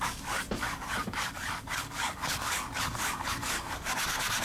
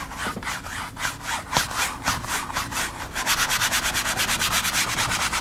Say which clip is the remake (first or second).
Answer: first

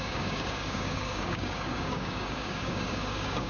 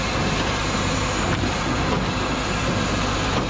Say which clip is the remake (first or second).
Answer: first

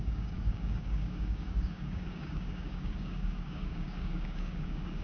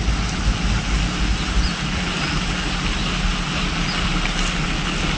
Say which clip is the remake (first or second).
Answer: first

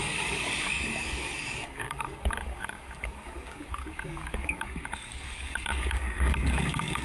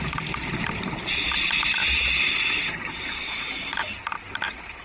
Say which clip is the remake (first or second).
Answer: first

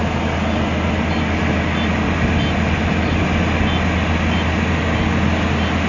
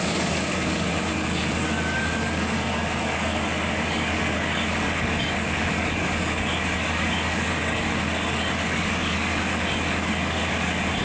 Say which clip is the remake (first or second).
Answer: second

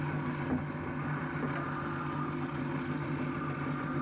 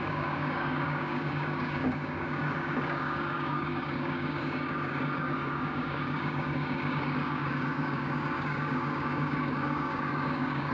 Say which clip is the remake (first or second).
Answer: second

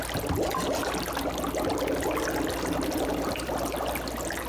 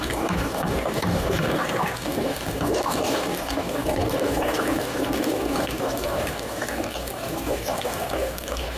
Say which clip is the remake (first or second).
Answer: second